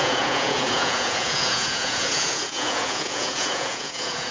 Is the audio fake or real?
fake